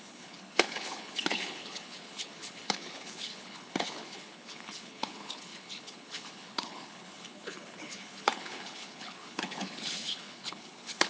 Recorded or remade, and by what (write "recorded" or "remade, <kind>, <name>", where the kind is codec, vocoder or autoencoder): remade, codec, HILCodec